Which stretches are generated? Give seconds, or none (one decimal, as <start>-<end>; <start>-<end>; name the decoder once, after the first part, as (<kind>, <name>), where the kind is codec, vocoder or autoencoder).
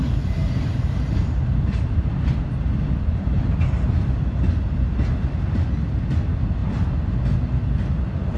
0.4-3.4 (vocoder, BigVGAN v2)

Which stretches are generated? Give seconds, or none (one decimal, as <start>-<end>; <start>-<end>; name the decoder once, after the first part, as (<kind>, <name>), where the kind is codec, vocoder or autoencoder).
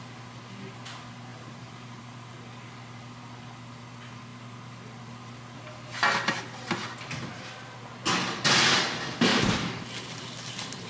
1.3-2.0 (vocoder, BigVGAN v2); 9.3-10.9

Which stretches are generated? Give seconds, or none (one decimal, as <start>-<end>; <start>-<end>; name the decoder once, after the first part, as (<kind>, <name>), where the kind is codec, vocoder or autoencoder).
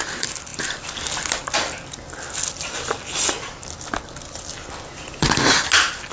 none